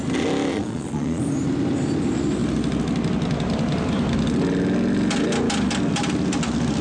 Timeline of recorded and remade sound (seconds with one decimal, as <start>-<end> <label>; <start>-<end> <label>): 0.0-0.5 recorded; 0.5-1.2 remade; 1.2-6.8 recorded